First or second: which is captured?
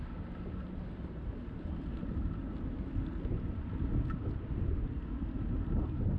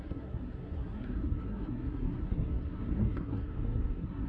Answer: first